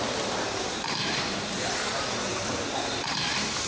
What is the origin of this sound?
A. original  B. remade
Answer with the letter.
B